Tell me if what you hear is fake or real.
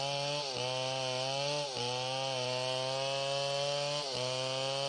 real